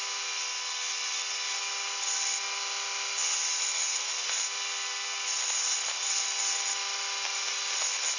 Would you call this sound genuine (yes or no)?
yes